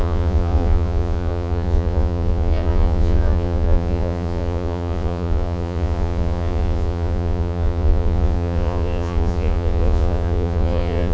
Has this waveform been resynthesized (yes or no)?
yes